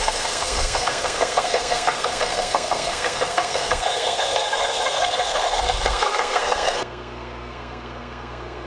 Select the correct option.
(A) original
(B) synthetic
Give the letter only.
B